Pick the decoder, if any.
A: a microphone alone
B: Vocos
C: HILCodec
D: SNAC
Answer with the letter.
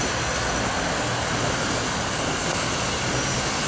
A